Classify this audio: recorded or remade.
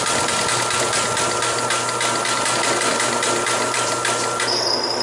recorded